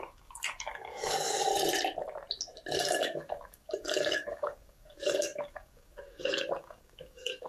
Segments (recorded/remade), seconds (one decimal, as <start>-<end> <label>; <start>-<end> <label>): 0.0-1.5 remade; 1.5-2.8 recorded; 2.8-7.5 remade